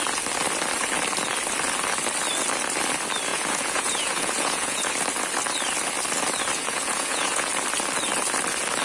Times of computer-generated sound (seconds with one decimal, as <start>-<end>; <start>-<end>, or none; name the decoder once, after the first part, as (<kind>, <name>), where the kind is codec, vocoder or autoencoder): 3.3-4.9 (vocoder, Vocos); 6.6-7.5